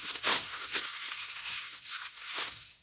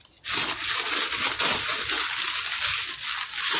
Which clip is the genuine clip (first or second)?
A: second